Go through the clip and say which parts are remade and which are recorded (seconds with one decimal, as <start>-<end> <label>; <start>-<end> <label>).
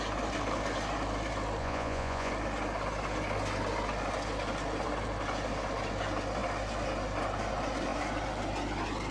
0.0-1.6 recorded; 1.6-2.3 remade; 2.3-9.1 recorded